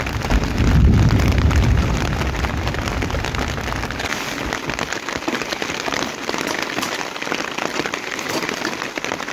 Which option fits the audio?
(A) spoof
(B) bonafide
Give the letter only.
B